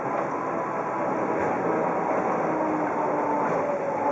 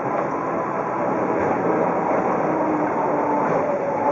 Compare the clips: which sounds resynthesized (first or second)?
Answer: second